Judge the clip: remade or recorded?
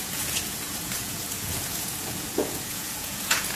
remade